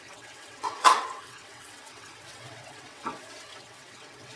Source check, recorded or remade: remade